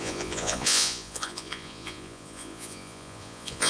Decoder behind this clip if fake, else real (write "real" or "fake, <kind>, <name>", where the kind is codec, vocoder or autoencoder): fake, vocoder, Vocos